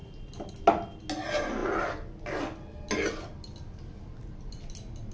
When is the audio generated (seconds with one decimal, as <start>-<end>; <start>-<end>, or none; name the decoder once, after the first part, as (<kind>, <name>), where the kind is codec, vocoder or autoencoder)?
none

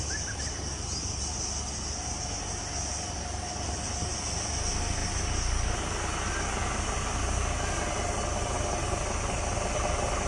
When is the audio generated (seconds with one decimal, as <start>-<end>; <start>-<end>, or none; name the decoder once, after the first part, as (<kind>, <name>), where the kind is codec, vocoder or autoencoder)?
none

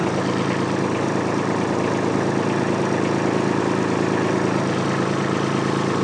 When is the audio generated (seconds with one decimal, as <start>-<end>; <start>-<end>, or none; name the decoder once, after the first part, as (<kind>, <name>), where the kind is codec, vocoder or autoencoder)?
none

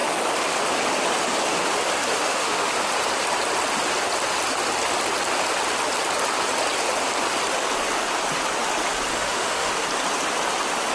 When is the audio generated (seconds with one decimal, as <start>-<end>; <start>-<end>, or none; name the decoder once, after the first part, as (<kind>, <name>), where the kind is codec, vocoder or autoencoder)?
2.1-2.7 (autoencoder, DAC-VAE); 9.1-9.7